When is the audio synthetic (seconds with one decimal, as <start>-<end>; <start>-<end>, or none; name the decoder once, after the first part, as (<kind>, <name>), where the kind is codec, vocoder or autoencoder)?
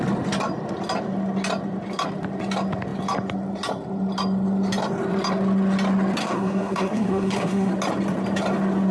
6.2-7.7 (codec, SNAC)